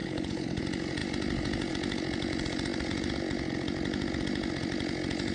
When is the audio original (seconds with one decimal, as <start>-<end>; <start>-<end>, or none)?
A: 0.6-5.3